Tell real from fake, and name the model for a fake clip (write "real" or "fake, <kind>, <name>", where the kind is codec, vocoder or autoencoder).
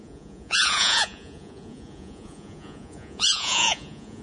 fake, vocoder, Vocos